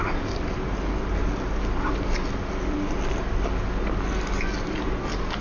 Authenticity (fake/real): real